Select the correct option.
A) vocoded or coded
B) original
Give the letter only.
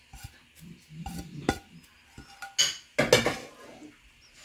B